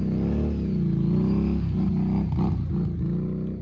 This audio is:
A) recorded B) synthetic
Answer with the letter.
A